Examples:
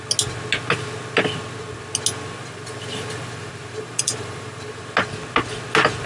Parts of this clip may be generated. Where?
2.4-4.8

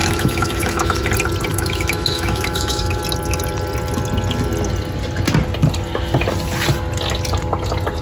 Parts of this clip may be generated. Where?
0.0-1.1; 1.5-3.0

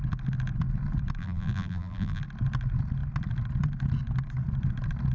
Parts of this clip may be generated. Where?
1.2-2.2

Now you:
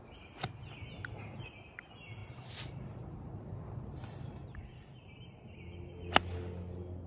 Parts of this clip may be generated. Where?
2.2-5.4

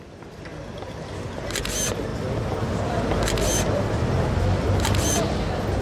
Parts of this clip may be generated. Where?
none

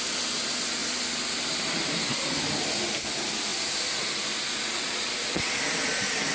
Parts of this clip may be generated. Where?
3.5-5.1

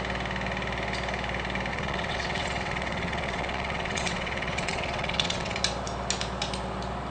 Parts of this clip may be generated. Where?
1.7-5.6